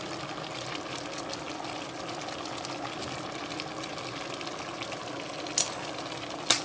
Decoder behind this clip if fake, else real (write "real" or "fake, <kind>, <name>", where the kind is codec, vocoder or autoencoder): real